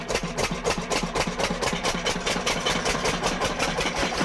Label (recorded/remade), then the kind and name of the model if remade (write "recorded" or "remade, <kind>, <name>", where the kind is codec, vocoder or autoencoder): remade, vocoder, BigVGAN v2